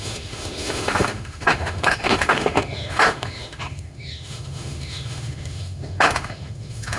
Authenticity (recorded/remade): remade